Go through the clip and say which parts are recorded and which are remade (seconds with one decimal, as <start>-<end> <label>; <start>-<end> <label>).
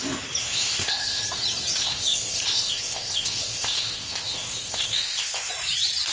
0.0-0.4 recorded; 0.4-1.2 remade; 1.2-1.8 recorded; 1.8-5.5 remade; 5.5-6.1 recorded